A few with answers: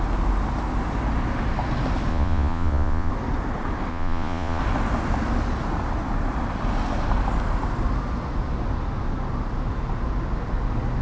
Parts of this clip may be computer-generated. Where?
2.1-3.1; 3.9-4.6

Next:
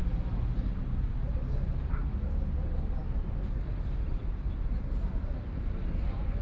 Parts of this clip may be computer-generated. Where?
none

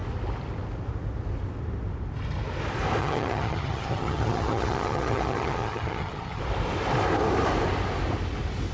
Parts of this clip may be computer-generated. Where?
3.0-6.4

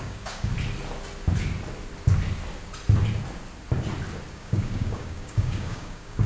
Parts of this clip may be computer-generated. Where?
0.0-0.5; 4.3-6.3

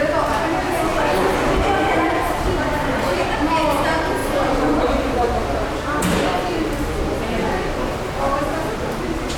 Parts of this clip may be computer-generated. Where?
0.0-9.4

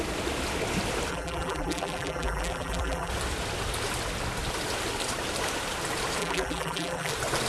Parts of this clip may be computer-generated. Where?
1.1-3.1; 6.2-7.1